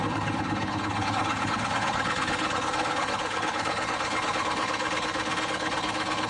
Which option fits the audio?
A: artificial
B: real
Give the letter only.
A